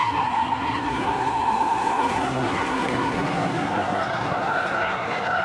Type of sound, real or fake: fake